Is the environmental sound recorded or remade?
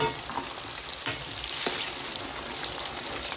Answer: remade